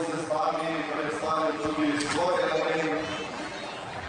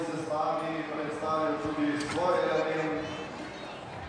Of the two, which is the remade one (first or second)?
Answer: first